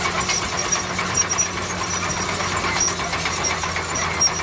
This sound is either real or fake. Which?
real